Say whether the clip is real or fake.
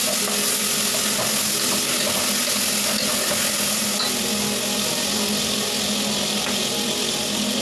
real